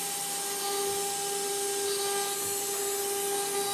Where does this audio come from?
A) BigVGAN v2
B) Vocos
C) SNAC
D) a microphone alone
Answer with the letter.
D